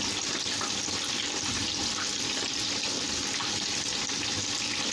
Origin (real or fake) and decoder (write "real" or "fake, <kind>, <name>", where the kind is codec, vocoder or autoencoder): real